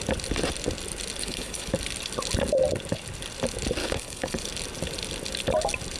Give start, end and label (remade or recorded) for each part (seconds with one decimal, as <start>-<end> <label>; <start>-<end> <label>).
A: 0.0-1.2 recorded; 1.2-1.7 remade; 1.7-3.8 recorded; 3.8-4.4 remade; 4.4-6.0 recorded